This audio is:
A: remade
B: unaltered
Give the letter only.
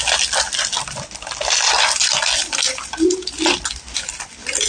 B